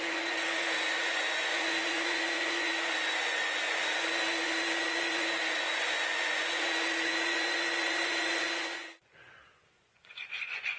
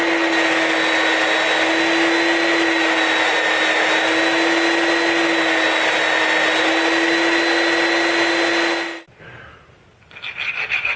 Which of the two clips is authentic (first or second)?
second